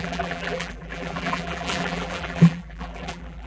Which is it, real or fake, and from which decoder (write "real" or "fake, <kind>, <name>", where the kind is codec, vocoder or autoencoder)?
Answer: fake, vocoder, BigVGAN v2